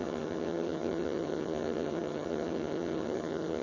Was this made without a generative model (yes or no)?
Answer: no